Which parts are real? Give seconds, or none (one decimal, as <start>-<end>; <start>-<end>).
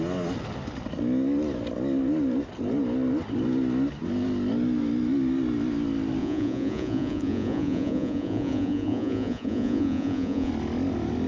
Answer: 0.0-6.2; 10.5-11.3